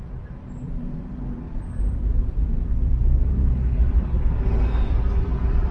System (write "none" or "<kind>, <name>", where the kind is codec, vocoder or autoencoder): vocoder, BigVGAN v2